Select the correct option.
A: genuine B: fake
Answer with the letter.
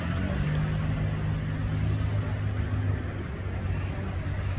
A